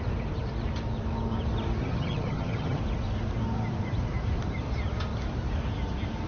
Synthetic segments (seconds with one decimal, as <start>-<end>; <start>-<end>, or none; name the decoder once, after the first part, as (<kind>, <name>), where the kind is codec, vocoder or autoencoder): 1.8-2.8 (vocoder, HiFi-GAN)